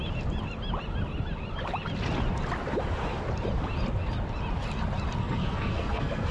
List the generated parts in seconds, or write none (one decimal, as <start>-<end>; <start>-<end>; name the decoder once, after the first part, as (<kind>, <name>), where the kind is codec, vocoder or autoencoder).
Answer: 5.2-6.3 (codec, SNAC)